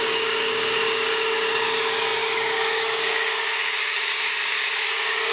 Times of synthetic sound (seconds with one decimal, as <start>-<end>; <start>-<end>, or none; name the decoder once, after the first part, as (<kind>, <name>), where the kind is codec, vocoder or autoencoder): 0.0-5.3 (codec, DAC)

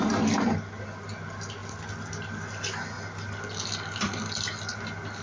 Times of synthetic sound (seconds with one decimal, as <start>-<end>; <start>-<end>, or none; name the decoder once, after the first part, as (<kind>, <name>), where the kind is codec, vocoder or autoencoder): none

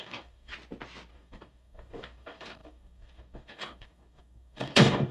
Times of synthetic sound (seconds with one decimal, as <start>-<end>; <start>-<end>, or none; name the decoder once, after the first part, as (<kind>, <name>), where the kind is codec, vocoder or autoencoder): 0.0-0.5 (codec, DAC); 1.1-5.1

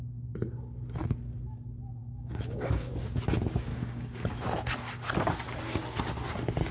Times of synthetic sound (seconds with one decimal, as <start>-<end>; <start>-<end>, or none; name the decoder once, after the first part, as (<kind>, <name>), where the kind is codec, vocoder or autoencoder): 2.0-2.9 (codec, DAC); 3.7-4.3

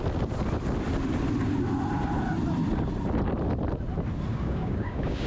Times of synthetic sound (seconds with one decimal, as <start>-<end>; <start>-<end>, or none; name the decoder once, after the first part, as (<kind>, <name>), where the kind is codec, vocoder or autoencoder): 4.3-5.3 (codec, DAC)